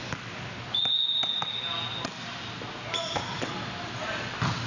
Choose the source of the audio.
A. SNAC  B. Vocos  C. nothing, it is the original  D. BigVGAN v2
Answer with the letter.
C